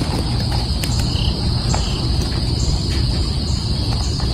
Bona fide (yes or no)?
yes